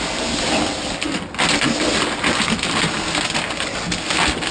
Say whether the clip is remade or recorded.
recorded